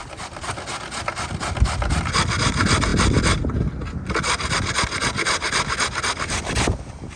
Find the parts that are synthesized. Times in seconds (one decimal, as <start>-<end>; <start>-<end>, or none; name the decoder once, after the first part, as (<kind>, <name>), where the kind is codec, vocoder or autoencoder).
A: none